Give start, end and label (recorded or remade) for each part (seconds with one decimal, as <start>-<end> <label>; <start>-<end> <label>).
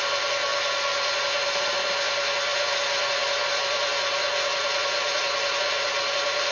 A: 0.0-6.5 recorded